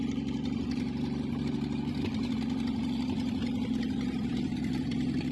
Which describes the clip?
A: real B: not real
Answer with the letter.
B